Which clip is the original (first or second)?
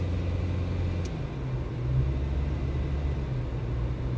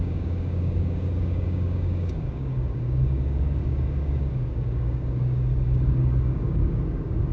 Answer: first